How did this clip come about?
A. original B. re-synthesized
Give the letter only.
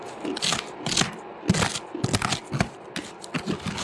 A